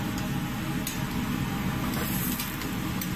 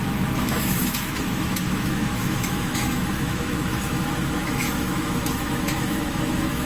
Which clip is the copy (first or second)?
second